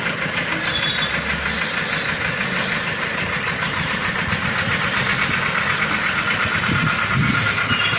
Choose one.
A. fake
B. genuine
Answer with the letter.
B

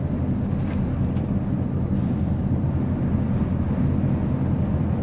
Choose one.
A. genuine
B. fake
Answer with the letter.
A